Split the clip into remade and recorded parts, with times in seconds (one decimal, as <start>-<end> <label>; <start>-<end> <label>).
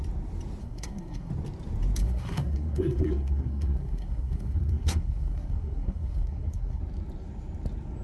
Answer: 0.0-0.6 recorded; 0.6-1.3 remade; 1.3-2.0 recorded; 2.0-6.8 remade; 6.8-8.0 recorded